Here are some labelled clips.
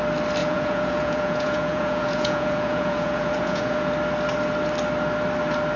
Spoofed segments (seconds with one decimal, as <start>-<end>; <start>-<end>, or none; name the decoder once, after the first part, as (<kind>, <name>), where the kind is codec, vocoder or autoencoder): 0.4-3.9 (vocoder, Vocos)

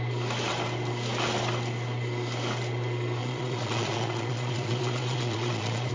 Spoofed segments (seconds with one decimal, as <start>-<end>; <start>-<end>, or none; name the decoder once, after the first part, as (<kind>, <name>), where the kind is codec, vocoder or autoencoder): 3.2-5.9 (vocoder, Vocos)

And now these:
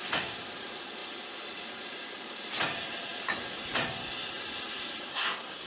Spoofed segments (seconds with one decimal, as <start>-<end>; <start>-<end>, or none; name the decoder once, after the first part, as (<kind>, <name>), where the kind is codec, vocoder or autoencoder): 5.1-5.7 (codec, SNAC)

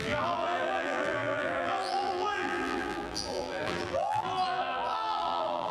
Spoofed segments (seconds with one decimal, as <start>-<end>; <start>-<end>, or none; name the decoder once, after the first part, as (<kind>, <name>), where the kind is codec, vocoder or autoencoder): 0.0-5.7 (vocoder, BigVGAN v2)

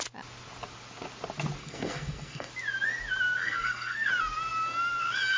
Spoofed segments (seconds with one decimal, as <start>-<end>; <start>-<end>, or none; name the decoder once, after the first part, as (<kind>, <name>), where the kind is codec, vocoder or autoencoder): 1.6-2.5 (codec, SNAC); 3.4-4.1